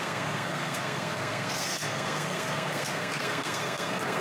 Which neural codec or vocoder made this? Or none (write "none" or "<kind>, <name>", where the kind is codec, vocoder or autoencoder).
codec, SNAC